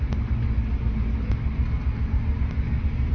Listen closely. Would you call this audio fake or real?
real